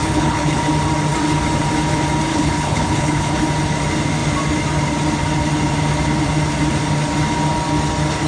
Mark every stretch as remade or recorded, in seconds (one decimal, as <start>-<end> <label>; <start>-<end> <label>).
0.0-0.6 remade; 0.6-2.3 recorded; 2.3-3.4 remade; 3.4-8.3 recorded